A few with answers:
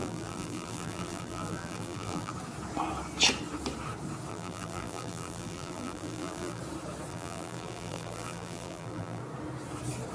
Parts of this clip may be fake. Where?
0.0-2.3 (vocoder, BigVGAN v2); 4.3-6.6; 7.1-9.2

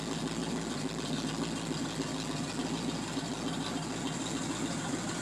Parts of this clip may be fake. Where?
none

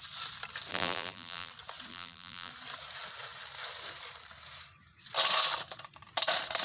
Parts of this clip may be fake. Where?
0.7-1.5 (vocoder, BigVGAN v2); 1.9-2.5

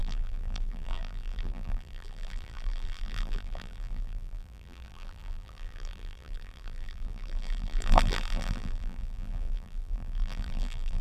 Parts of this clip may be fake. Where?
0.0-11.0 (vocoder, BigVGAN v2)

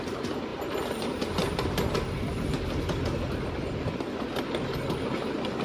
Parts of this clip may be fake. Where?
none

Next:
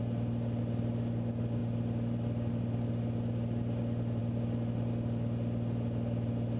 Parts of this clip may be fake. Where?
none